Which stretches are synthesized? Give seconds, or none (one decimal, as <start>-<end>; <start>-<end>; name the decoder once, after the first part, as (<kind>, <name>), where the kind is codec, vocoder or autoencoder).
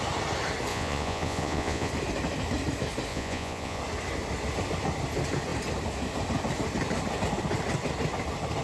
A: 0.7-1.9 (vocoder, Vocos); 3.1-3.8